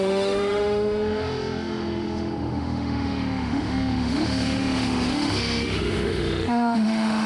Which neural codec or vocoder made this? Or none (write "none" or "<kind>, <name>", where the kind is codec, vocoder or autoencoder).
autoencoder, DAC-VAE